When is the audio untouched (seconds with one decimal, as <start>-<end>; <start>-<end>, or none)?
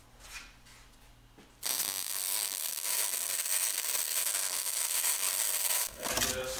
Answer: 0.0-2.1; 6.1-6.6